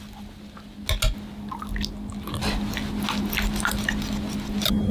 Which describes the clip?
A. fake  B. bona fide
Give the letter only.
B